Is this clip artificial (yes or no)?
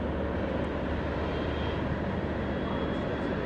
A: no